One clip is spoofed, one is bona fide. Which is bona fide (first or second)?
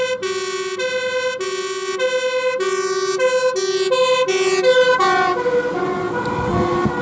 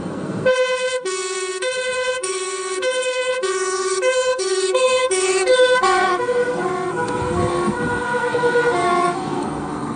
first